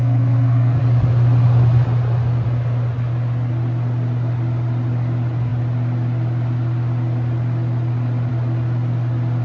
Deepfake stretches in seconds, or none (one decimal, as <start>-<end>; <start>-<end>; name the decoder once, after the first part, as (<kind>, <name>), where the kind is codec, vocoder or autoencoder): 0.0-0.8 (codec, SNAC)